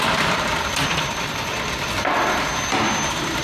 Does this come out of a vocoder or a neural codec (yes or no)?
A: no